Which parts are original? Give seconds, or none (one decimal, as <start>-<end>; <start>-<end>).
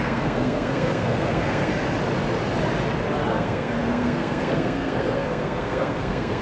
1.7-3.3